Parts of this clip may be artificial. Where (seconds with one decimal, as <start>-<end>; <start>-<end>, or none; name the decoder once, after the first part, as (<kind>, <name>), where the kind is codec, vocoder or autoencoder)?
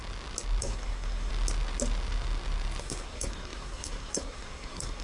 0.6-1.3 (codec, SNAC); 2.8-5.0